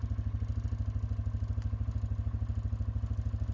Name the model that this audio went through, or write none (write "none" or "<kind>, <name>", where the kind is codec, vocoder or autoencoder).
none